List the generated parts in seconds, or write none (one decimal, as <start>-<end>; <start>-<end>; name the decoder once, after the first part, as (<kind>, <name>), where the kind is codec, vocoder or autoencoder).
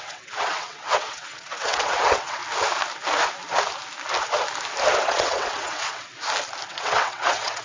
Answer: 0.0-2.4 (vocoder, WaveNeXt); 5.0-6.1; 6.7-7.6